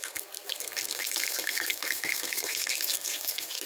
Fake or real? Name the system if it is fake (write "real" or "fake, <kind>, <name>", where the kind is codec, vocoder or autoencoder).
fake, codec, SNAC